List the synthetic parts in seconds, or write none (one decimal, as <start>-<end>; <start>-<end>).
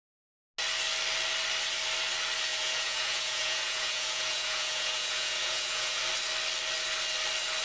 2.5-6.0